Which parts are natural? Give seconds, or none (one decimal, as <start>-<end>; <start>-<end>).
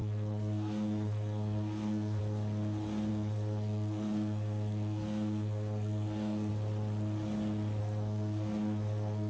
2.2-3.1; 6.5-7.8